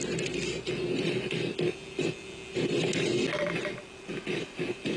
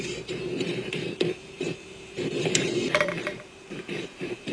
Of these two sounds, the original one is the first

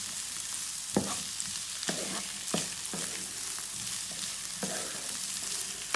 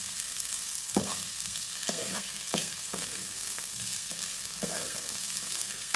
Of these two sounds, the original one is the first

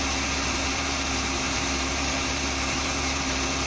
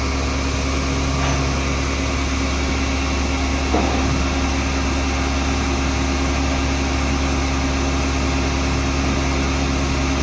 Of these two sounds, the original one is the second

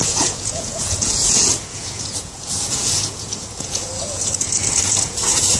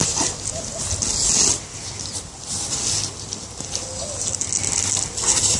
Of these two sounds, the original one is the second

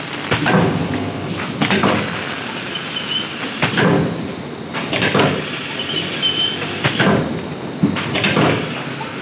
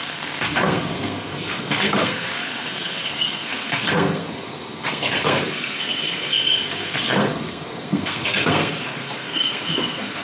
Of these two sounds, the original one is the first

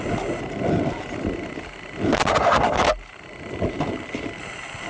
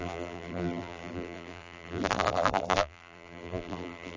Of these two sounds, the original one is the first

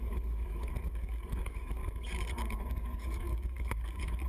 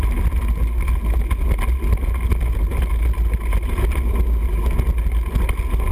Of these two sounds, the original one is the second